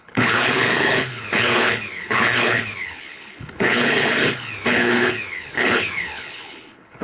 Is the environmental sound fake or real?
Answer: fake